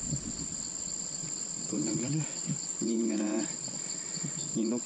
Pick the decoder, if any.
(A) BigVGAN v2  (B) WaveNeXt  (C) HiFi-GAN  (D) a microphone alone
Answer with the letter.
B